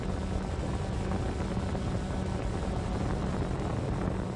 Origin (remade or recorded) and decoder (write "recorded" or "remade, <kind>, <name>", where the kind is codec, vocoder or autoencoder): recorded